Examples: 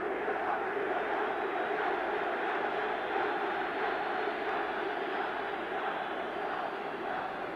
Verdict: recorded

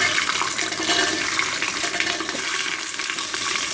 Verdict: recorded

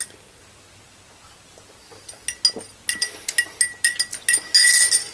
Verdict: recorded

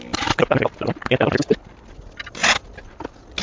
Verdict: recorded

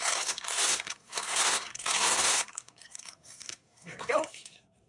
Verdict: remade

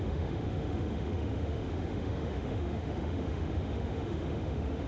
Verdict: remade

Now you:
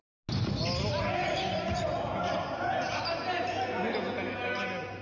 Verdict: recorded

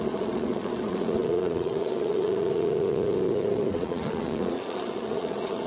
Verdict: remade